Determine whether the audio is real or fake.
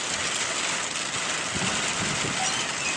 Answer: real